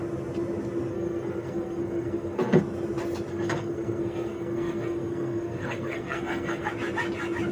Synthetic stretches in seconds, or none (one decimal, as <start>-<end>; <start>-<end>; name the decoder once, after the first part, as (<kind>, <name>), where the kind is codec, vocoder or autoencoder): 0.9-2.6 (codec, SNAC); 3.3-6.7